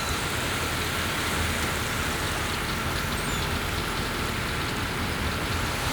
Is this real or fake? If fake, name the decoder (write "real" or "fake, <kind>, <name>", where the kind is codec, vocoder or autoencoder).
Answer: real